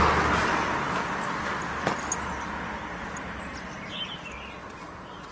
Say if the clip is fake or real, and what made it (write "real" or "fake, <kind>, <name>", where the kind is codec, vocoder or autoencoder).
real